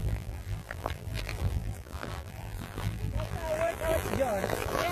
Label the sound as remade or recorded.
remade